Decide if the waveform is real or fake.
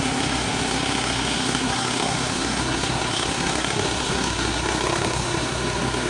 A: fake